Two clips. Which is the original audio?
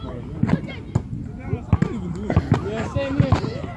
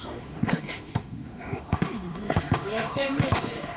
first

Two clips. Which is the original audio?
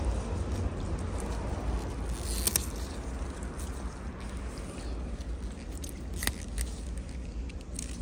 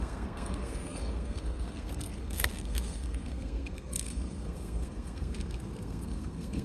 first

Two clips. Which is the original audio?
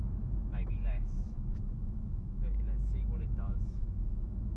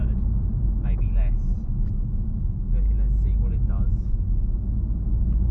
second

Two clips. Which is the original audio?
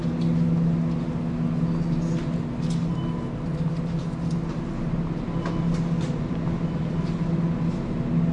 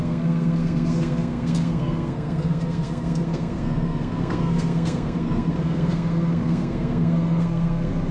first